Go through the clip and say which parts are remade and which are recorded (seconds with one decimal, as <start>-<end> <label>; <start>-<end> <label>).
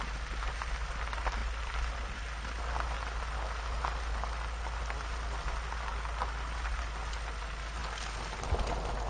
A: 0.0-9.1 recorded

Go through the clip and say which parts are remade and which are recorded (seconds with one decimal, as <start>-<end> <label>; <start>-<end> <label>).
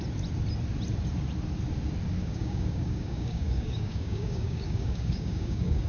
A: 0.0-2.2 recorded; 2.2-5.9 remade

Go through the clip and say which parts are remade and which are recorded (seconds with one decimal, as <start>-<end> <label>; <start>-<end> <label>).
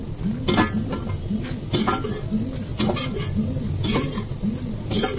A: 0.0-5.2 recorded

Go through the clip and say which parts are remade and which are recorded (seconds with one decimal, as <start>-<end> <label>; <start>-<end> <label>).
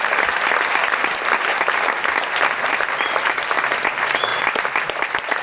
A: 0.0-5.4 remade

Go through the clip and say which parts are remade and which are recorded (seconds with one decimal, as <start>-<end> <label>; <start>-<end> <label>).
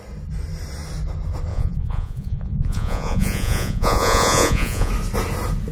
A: 0.0-1.5 recorded; 1.5-4.9 remade; 4.9-5.7 recorded